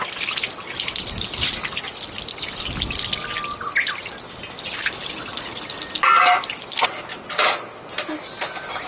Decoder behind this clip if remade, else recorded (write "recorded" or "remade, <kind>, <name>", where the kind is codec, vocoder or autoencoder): recorded